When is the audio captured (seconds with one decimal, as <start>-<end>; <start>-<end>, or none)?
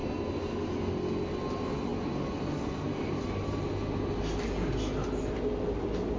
0.0-6.2